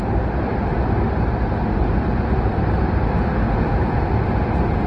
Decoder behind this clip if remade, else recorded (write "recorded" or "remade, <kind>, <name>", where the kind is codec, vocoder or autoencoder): recorded